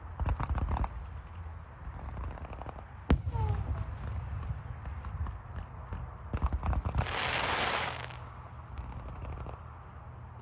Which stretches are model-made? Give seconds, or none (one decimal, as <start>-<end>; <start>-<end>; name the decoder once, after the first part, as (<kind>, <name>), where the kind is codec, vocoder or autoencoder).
none